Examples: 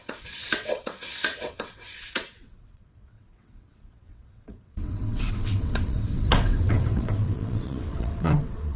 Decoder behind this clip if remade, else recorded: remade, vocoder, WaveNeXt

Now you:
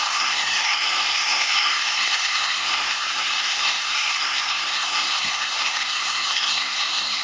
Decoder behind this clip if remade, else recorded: remade, codec, SNAC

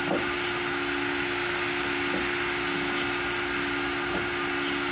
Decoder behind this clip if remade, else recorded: recorded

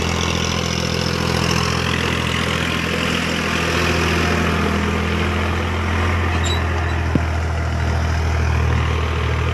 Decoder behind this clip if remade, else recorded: recorded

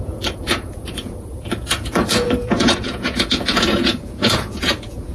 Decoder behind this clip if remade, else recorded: remade, vocoder, Vocos